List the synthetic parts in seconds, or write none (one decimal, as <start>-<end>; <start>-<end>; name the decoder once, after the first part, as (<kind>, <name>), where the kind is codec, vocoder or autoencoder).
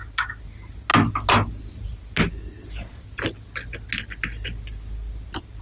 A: none